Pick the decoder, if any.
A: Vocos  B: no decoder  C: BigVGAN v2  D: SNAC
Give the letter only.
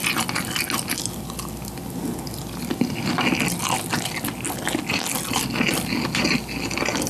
B